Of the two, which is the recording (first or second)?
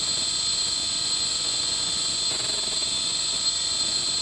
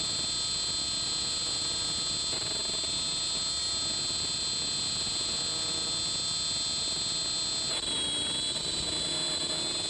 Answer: second